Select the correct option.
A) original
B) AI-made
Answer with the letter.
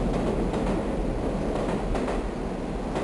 A